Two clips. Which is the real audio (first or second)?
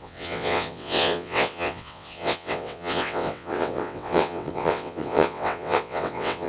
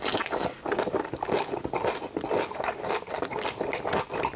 second